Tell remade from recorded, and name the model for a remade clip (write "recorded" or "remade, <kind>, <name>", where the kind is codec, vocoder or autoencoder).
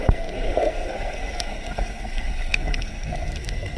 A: remade, codec, SNAC